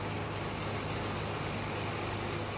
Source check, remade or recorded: recorded